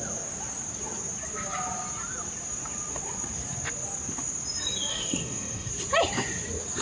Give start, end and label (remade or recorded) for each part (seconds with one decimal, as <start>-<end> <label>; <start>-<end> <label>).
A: 0.0-4.9 recorded; 4.9-5.7 remade; 5.7-6.8 recorded